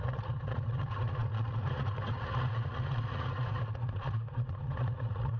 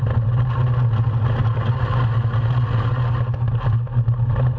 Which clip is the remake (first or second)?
first